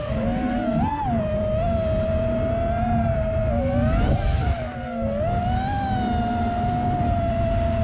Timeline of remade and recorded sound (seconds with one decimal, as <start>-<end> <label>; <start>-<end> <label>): 0.0-7.8 recorded

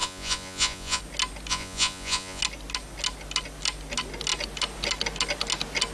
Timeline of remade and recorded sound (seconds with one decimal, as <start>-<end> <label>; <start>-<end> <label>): 0.0-1.0 remade; 1.0-1.5 recorded; 1.5-2.4 remade; 2.4-5.9 recorded

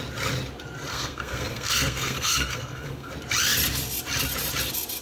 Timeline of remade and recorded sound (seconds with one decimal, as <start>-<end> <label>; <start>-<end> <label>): 0.0-0.9 recorded; 0.9-3.1 remade; 3.1-5.0 recorded

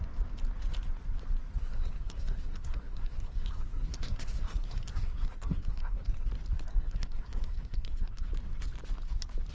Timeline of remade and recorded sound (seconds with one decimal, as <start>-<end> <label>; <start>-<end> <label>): 0.0-1.6 recorded; 1.6-6.3 remade; 6.3-6.7 recorded; 6.7-8.3 remade; 8.3-9.5 recorded

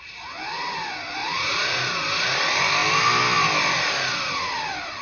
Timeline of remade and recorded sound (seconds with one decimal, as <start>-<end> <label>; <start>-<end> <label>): 0.0-1.2 recorded; 1.2-1.8 remade; 1.8-5.0 recorded